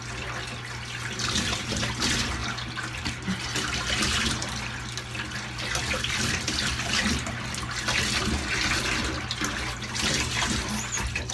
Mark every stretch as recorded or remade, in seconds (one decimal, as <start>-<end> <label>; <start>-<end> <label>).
0.0-11.3 recorded